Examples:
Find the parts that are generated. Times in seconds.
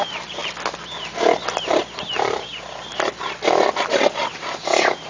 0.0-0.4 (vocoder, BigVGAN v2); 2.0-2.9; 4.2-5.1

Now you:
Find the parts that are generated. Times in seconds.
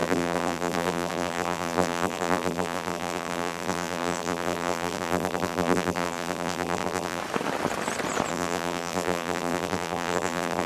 0.0-7.2 (vocoder, BigVGAN v2); 8.3-10.7